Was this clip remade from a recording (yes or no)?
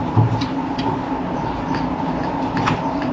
no